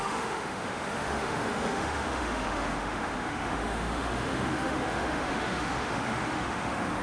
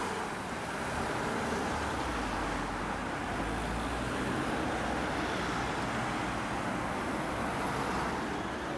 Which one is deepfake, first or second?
first